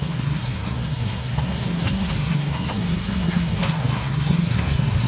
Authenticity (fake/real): fake